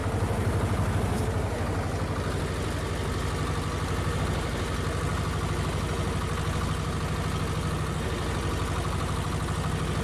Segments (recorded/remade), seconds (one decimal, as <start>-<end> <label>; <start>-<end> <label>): 0.0-10.0 recorded